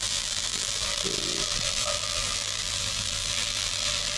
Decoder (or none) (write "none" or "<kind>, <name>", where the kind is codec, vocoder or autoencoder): vocoder, BigVGAN v2